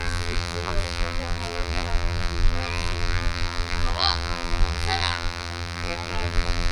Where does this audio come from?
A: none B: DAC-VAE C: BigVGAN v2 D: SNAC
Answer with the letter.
C